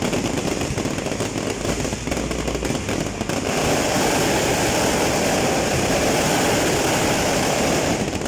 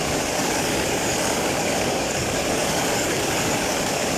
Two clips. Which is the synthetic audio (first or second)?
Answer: second